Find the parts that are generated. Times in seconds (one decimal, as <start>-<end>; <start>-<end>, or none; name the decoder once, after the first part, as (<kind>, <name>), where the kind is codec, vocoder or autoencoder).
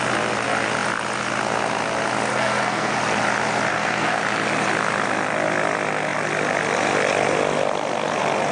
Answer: 2.3-2.9 (codec, SNAC); 3.7-4.2